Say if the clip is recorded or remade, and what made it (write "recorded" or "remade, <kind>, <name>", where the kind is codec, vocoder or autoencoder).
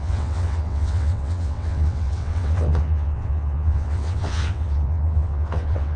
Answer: remade, vocoder, WaveNeXt